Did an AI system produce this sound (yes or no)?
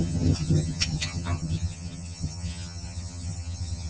yes